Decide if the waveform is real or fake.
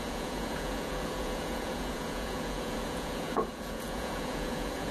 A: fake